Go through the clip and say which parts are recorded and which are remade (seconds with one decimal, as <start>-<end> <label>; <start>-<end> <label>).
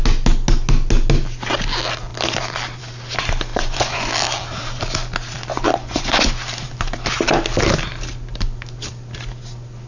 0.0-3.5 recorded; 3.5-4.1 remade; 4.1-5.5 recorded; 5.5-6.3 remade; 6.3-9.9 recorded